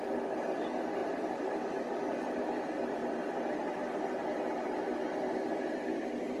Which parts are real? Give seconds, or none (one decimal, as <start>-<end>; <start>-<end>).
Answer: 0.0-1.0; 1.7-6.4